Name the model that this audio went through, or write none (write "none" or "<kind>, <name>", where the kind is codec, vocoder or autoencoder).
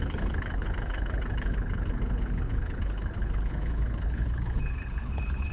codec, HILCodec